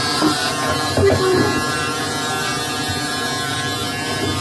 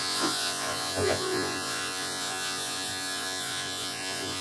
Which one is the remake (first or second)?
second